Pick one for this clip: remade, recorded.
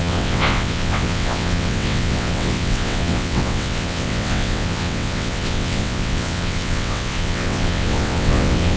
remade